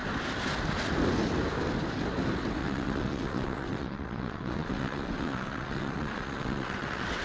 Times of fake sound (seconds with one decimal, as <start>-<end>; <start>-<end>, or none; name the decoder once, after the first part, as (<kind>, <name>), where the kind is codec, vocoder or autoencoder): 2.6-7.2 (vocoder, WaveNeXt)